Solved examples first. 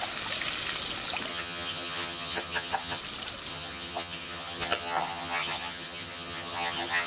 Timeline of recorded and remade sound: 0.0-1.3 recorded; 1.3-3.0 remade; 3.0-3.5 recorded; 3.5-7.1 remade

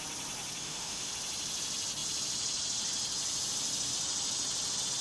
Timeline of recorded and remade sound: 0.0-0.6 recorded; 0.6-1.1 remade; 1.1-5.0 recorded

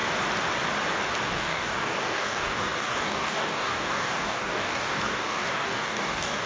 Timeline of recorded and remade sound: 0.0-1.3 recorded; 1.3-6.5 remade

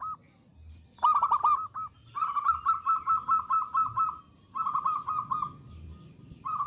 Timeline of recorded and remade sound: 0.0-6.7 recorded

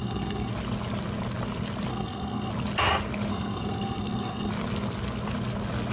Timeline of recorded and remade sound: 0.0-0.5 remade; 0.5-1.9 recorded; 1.9-2.5 remade; 2.5-3.3 recorded; 3.3-4.5 remade; 4.5-5.9 recorded